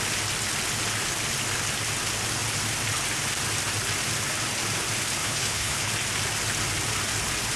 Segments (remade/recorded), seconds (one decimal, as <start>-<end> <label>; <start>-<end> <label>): 0.0-5.2 recorded; 5.2-5.9 remade; 5.9-7.6 recorded